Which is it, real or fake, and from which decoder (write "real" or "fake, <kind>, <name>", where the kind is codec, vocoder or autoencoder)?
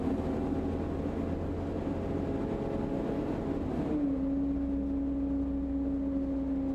real